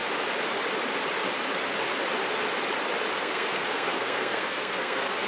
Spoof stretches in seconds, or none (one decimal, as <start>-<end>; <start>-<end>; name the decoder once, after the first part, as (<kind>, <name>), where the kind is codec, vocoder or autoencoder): 3.2-5.3 (codec, SNAC)